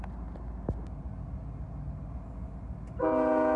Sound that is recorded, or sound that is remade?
recorded